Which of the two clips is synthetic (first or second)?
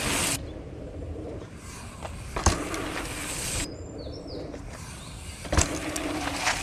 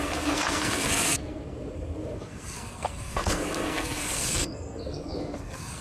second